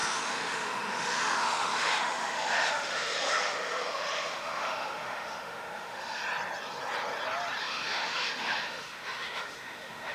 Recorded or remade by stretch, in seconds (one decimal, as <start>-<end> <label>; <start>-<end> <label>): 0.0-6.2 remade; 6.2-7.6 recorded; 7.6-10.1 remade